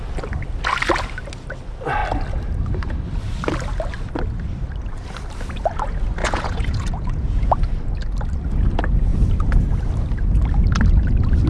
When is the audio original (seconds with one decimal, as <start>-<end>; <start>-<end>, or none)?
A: 0.0-6.2; 7.5-11.5